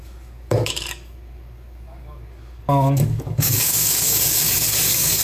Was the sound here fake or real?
fake